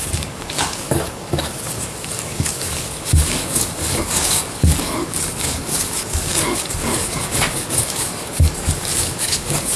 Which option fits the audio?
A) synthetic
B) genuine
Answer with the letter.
A